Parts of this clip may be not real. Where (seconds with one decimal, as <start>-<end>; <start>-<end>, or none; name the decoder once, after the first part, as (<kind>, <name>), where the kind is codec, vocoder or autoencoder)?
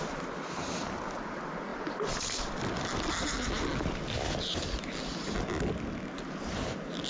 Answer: none